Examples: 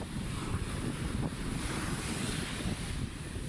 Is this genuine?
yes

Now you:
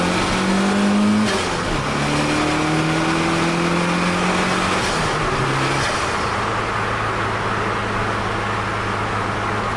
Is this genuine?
yes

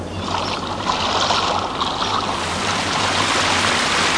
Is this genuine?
yes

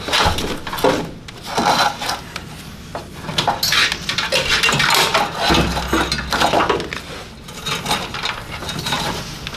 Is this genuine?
yes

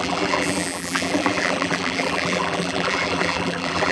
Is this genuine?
no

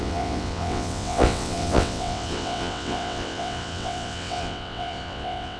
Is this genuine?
no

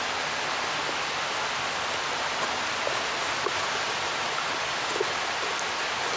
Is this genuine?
yes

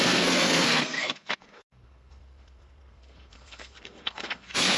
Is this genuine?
no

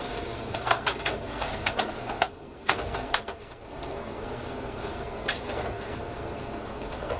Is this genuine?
no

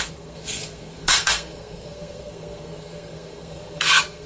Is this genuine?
no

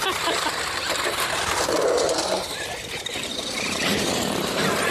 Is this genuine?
no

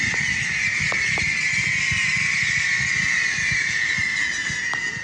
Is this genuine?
yes